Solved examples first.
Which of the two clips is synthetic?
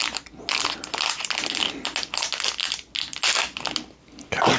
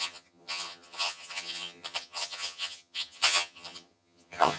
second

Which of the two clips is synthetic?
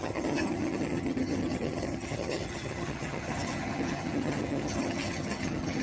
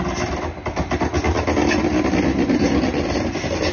first